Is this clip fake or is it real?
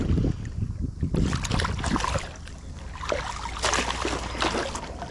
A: real